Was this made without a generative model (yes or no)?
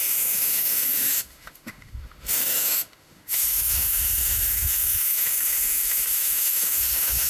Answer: no